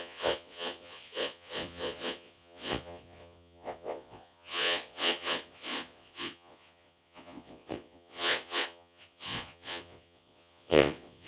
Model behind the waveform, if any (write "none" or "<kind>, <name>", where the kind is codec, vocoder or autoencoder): vocoder, Vocos